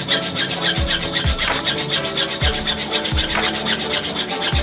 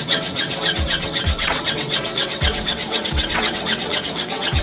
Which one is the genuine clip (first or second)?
first